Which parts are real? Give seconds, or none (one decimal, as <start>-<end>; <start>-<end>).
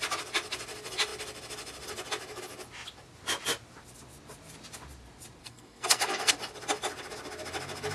0.0-5.4; 6.3-7.9